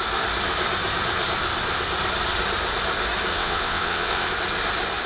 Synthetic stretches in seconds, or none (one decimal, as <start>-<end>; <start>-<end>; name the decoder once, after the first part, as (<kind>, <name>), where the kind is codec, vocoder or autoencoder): 3.3-4.3 (vocoder, WaveNeXt)

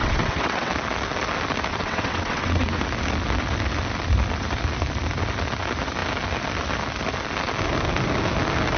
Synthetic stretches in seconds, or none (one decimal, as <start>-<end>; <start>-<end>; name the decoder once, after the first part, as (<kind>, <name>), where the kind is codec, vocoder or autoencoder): 0.0-0.7 (vocoder, WaveNeXt); 1.7-2.8

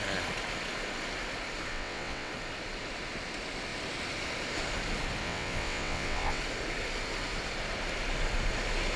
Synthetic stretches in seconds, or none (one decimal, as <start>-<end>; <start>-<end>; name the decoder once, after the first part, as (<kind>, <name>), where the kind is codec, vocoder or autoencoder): 1.7-2.3 (vocoder, WaveNeXt); 5.2-6.4

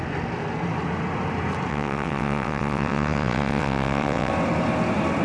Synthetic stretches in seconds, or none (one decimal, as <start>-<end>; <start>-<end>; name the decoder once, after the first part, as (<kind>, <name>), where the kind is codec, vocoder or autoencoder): 1.7-4.3 (vocoder, WaveNeXt)

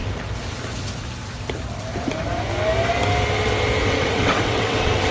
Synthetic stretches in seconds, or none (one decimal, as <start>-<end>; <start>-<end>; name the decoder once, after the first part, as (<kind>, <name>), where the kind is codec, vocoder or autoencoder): 3.8-5.1 (vocoder, WaveNeXt)